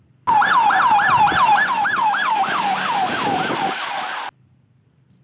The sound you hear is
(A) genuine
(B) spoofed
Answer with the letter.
A